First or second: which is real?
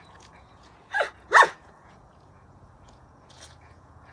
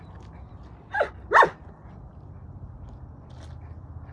second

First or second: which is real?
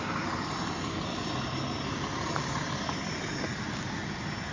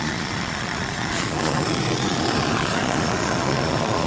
first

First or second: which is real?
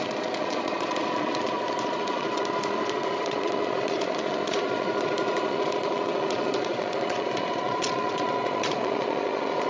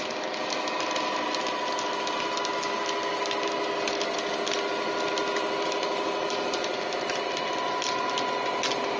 second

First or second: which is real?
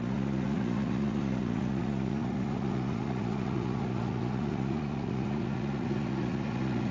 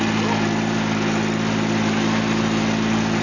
second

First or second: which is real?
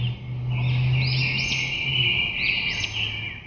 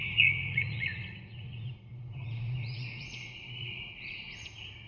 first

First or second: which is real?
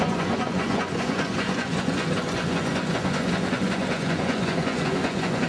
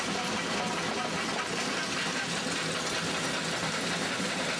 second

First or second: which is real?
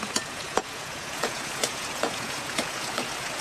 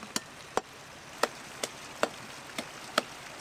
second